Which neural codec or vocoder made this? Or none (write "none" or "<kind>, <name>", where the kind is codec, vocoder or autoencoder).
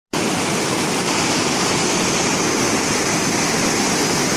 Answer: none